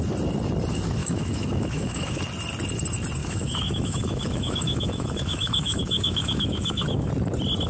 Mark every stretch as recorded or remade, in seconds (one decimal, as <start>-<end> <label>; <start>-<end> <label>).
0.0-1.0 recorded; 1.0-2.2 remade; 2.2-3.2 recorded; 3.2-7.1 remade; 7.1-7.7 recorded